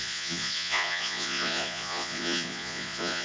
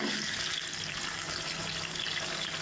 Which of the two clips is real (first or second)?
second